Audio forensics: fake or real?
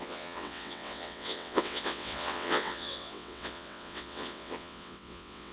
fake